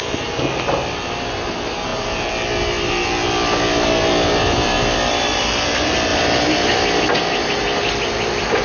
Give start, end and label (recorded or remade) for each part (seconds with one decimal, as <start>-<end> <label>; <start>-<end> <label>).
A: 0.0-8.6 recorded